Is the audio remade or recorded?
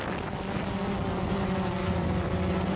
recorded